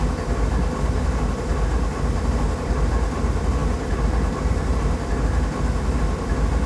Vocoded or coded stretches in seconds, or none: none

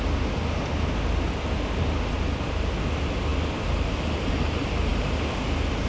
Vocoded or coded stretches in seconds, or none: none

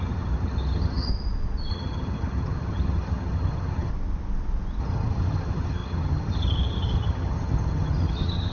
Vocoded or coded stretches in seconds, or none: 0.0-1.1 (vocoder, HiFi-GAN); 1.7-3.9; 4.8-8.5

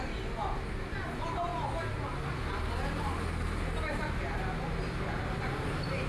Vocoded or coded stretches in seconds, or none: none